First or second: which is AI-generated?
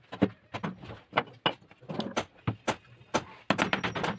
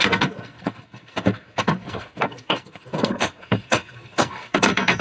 second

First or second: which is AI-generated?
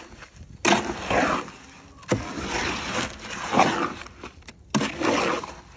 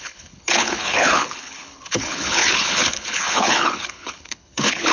second